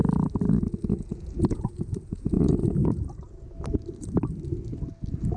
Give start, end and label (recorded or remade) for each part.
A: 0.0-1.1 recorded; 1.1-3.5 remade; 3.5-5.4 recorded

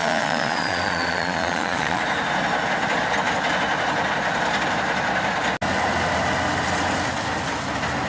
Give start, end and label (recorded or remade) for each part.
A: 0.0-2.0 remade; 2.0-8.1 recorded

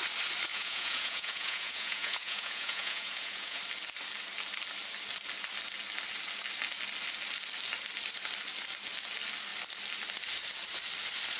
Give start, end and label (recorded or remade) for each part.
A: 0.0-0.5 recorded; 0.5-3.6 remade; 3.6-11.4 recorded

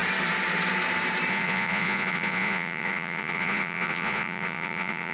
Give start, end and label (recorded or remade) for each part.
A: 0.0-1.3 recorded; 1.3-5.1 remade

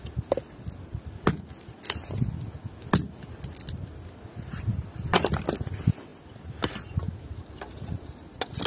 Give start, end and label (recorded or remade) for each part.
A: 0.0-8.7 recorded